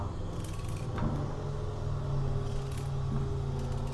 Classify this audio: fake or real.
real